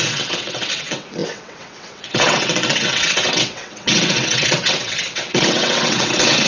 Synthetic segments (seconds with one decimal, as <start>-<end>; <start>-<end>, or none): 0.0-6.5